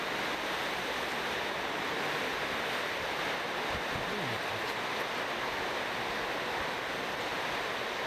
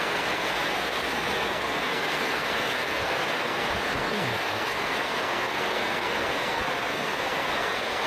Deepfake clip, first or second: second